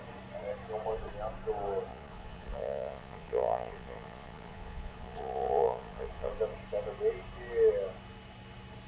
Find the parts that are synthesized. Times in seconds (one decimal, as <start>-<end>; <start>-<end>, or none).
1.9-6.3